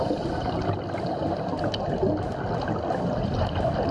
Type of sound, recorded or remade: recorded